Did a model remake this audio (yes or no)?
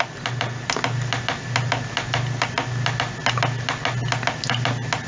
no